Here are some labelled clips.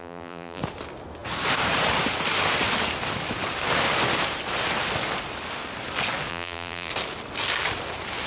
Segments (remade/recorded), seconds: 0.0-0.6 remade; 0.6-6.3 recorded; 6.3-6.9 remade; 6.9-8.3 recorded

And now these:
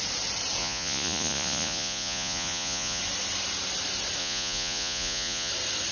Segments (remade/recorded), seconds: 0.0-0.6 recorded; 0.6-3.0 remade; 3.0-4.2 recorded; 4.2-5.5 remade; 5.5-5.9 recorded

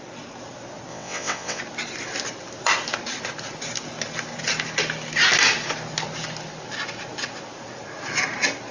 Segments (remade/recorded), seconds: 0.0-0.9 recorded; 0.9-1.6 remade; 1.6-8.7 recorded